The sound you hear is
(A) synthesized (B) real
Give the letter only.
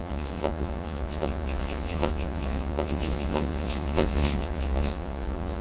A